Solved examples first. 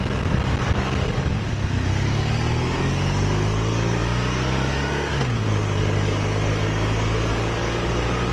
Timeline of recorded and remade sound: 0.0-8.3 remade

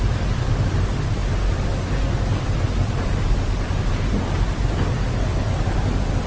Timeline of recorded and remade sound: 0.0-6.3 recorded